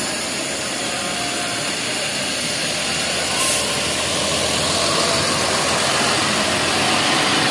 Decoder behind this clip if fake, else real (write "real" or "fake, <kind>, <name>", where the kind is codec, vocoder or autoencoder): real